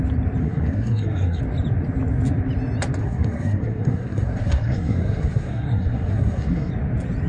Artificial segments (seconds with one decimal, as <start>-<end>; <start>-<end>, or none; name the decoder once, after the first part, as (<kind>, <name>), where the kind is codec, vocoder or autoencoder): 0.4-1.4 (codec, SNAC); 3.0-6.7